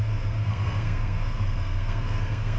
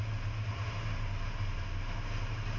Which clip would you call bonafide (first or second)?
second